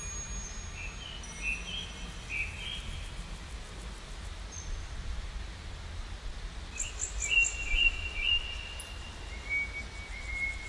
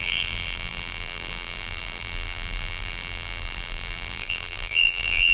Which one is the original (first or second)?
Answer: first